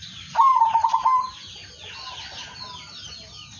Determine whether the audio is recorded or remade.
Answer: recorded